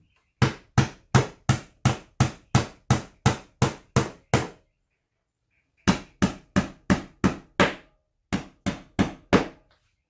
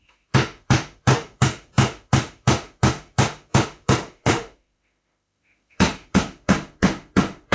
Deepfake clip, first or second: second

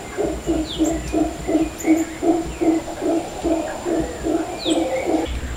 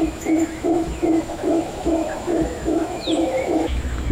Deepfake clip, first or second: second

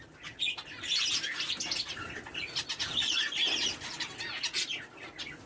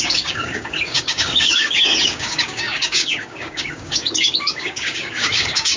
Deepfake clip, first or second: second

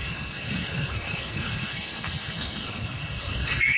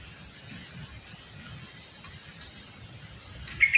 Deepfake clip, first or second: first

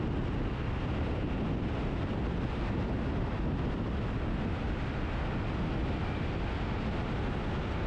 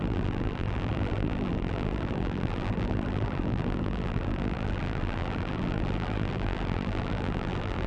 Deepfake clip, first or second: second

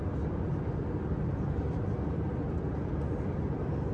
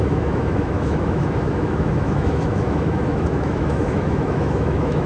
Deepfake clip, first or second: second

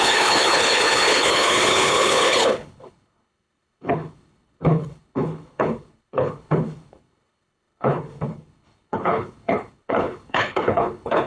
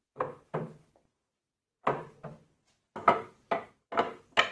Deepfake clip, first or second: first